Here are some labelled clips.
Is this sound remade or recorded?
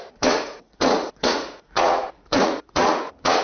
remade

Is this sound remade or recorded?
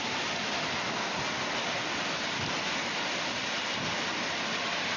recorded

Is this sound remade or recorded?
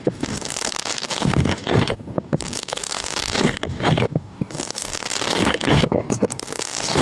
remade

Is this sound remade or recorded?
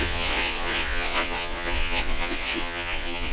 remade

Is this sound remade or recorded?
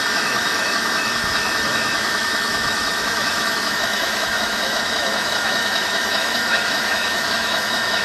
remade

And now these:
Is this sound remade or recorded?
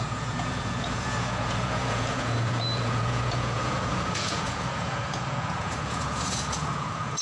remade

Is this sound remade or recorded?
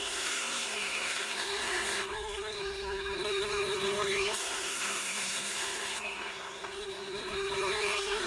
remade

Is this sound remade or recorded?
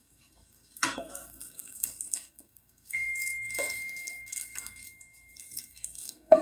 remade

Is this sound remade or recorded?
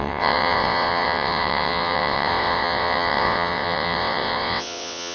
remade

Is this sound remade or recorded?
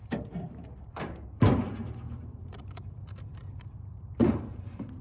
remade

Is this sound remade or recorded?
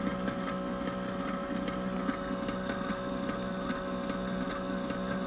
recorded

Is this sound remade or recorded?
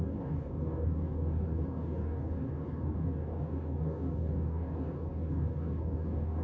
remade